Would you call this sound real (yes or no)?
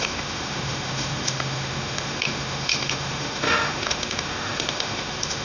no